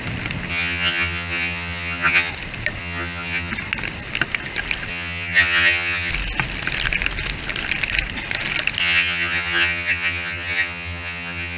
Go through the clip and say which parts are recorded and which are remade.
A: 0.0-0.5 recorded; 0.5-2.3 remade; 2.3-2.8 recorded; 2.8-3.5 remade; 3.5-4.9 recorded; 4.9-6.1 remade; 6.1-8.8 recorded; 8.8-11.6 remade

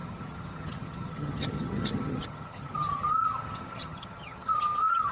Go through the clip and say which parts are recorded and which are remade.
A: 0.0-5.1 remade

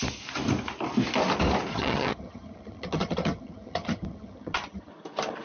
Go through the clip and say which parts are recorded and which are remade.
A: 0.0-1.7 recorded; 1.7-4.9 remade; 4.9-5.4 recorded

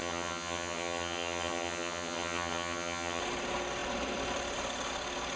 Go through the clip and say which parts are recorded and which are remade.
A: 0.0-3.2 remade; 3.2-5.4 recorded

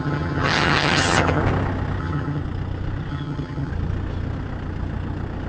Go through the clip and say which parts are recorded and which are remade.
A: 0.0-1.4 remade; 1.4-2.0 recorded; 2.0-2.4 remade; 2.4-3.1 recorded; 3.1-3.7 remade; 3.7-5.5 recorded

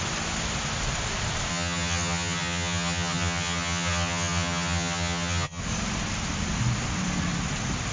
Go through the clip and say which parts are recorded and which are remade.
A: 0.0-1.5 recorded; 1.5-5.6 remade; 5.6-7.9 recorded

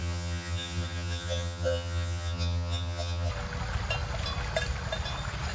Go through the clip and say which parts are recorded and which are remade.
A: 0.0-3.3 remade; 3.3-5.5 recorded